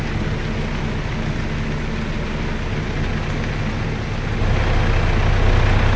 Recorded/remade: recorded